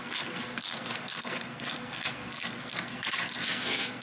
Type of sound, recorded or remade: remade